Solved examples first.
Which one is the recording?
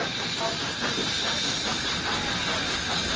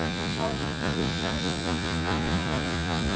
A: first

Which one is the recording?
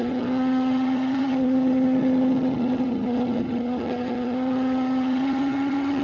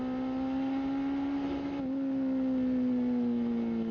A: second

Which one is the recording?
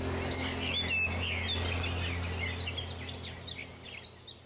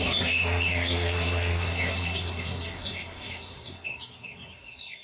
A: first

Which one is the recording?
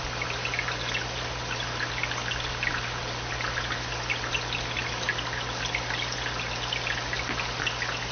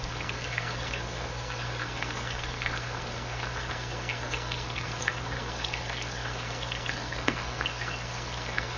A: first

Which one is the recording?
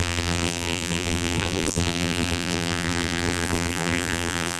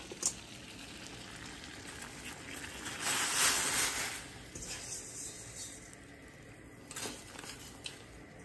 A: second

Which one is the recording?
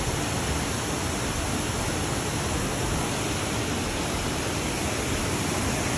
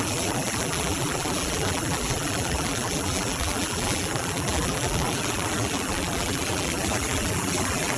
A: first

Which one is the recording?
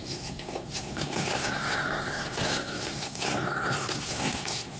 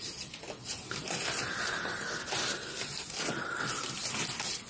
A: second